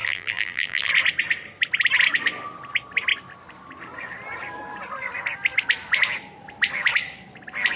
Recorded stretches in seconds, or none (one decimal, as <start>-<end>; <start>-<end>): 0.9-7.8